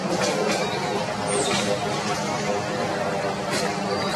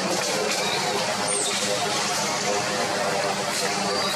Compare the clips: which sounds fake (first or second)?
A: second